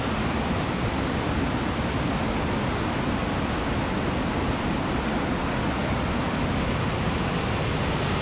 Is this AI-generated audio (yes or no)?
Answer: no